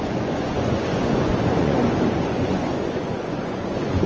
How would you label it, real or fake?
fake